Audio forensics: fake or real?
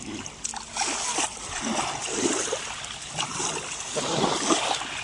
fake